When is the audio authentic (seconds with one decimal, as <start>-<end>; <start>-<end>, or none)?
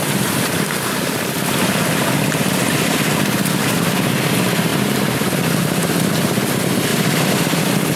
0.0-8.0